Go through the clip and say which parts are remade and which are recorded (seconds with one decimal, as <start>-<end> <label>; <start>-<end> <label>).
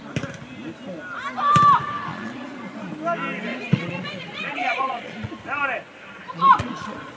0.0-2.1 recorded; 2.1-2.9 remade; 2.9-3.5 recorded; 3.5-5.3 remade; 5.3-6.3 recorded; 6.3-7.2 remade